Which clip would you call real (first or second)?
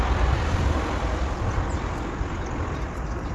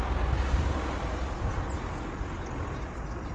second